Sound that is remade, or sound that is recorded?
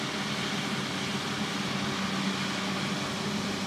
recorded